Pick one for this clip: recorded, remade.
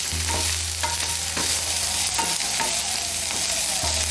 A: recorded